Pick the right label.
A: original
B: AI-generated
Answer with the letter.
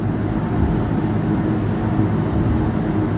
A